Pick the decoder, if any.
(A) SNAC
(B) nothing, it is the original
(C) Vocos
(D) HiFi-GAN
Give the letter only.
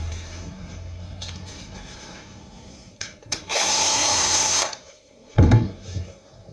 A